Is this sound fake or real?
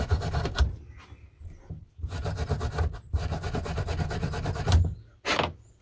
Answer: real